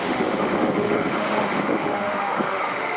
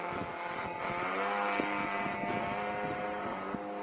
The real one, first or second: second